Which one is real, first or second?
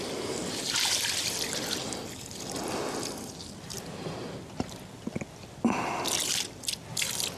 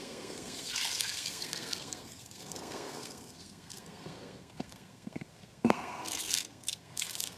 first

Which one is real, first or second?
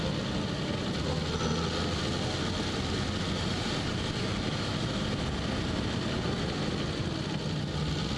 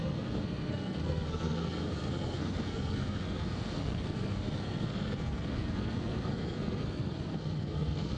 first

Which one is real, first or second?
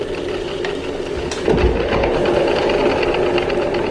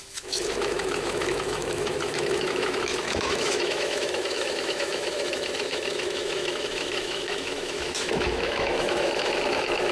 first